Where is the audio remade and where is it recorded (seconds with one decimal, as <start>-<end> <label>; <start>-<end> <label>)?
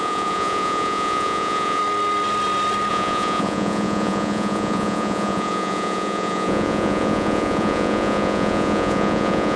0.0-1.8 remade; 1.8-2.9 recorded; 2.9-9.6 remade